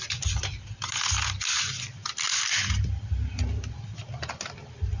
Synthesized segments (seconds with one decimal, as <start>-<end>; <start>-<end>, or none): none